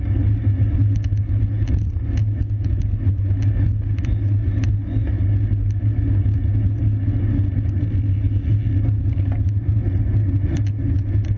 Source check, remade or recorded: recorded